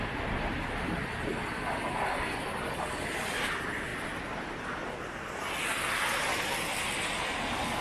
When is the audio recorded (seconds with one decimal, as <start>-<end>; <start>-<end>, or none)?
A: 0.0-7.8